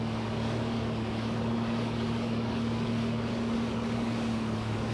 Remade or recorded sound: remade